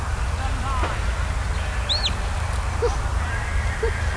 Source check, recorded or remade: recorded